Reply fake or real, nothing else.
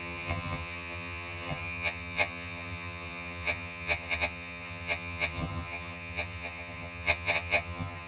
fake